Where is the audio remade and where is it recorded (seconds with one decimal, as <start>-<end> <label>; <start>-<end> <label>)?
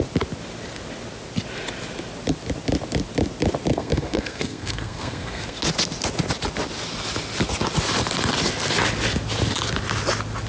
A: 0.0-3.7 recorded; 3.7-5.6 remade; 5.6-10.5 recorded